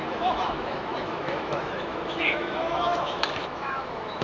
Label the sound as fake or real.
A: fake